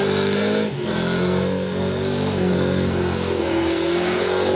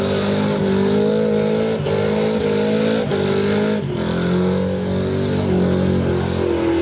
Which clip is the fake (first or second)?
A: first